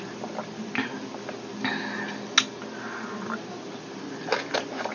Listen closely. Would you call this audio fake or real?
real